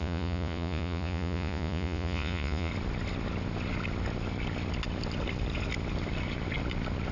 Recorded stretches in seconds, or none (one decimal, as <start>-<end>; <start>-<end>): 2.7-7.1